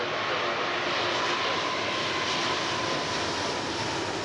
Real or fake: real